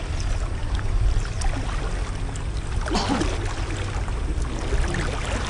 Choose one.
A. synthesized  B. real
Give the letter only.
B